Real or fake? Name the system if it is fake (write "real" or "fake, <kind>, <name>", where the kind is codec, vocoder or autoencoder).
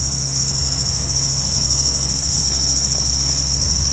fake, codec, SNAC